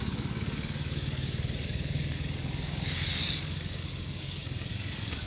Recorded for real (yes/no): no